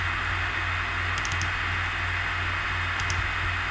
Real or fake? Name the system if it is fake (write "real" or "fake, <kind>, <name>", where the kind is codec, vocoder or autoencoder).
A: real